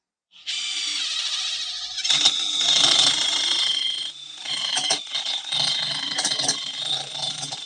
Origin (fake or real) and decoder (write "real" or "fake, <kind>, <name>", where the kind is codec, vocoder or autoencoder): real